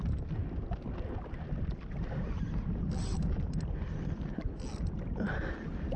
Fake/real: real